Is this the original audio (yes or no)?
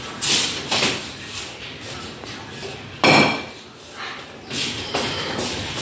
yes